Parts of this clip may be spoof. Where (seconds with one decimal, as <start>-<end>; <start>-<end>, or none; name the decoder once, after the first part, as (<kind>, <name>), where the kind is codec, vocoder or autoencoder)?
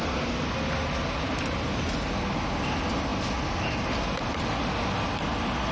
none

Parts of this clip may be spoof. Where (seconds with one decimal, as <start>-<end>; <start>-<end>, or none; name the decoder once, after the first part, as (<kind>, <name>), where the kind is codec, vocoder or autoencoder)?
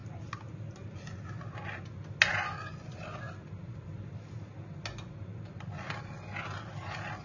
none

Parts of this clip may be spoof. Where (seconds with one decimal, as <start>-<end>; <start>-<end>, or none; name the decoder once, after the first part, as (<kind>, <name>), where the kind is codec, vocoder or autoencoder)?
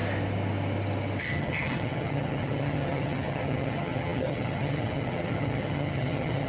1.2-6.5 (vocoder, HiFi-GAN)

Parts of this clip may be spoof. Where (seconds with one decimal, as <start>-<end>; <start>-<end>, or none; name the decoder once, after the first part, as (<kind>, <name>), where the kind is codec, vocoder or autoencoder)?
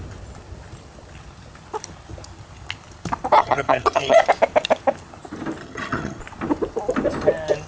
3.4-4.2 (vocoder, HiFi-GAN); 5.6-6.2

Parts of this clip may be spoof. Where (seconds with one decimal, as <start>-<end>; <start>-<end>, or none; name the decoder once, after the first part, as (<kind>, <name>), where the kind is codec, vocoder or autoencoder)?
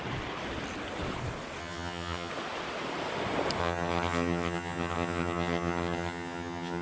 1.6-2.3 (vocoder, HiFi-GAN); 3.6-6.8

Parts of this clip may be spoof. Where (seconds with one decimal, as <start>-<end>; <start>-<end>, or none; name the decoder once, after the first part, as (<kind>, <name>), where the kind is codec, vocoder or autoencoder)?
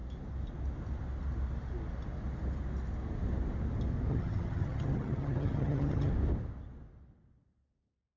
4.1-6.1 (vocoder, HiFi-GAN)